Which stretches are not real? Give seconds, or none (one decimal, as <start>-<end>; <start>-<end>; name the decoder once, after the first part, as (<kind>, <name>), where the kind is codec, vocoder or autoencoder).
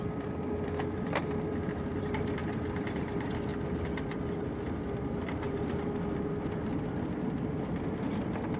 0.0-2.4 (vocoder, BigVGAN v2); 2.9-3.5; 5.2-8.6